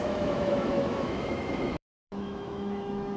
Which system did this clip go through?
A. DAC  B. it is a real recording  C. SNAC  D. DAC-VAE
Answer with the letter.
D